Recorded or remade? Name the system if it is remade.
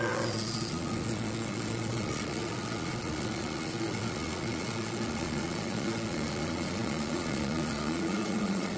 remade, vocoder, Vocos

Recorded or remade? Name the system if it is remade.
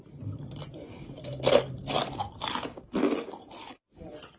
recorded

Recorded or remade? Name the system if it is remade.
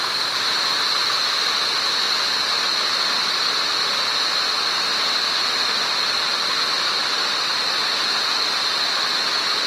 recorded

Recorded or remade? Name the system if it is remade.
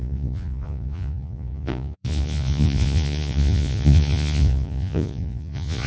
remade, vocoder, Vocos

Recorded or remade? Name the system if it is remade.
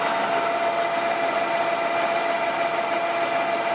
recorded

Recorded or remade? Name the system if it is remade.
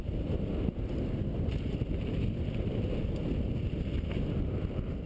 recorded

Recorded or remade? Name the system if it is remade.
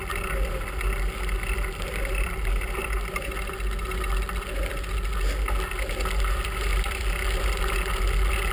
recorded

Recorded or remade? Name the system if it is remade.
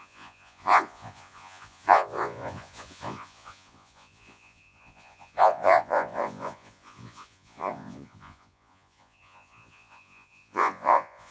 remade, vocoder, Vocos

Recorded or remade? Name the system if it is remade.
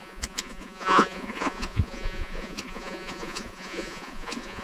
remade, vocoder, Vocos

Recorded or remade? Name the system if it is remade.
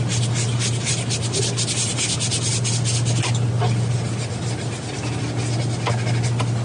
recorded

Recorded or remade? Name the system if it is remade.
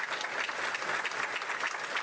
recorded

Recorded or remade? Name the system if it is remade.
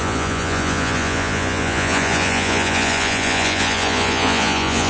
remade, vocoder, Vocos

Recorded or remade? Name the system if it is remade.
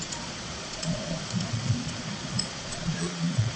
remade, vocoder, Vocos